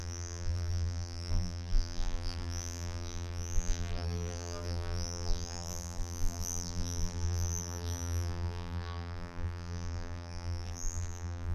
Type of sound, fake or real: fake